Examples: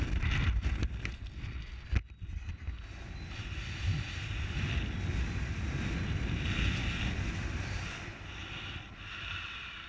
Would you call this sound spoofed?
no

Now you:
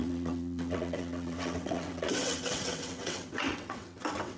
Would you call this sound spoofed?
yes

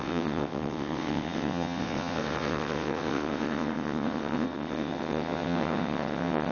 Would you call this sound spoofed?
yes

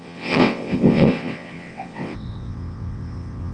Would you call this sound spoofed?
yes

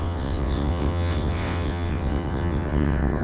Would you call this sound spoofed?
yes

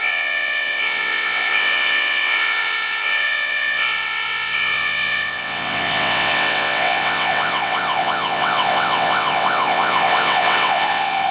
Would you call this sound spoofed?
yes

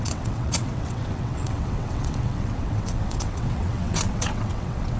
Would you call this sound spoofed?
yes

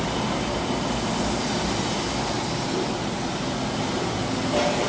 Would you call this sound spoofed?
no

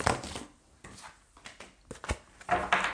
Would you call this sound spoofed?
no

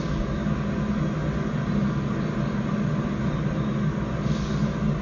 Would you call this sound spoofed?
no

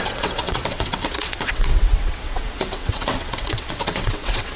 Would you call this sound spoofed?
yes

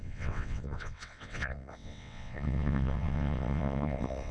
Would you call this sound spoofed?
yes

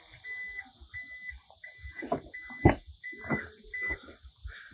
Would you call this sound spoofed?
no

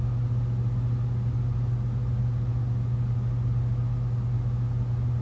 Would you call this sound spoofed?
no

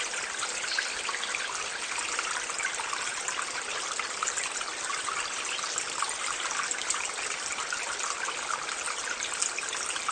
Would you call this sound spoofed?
no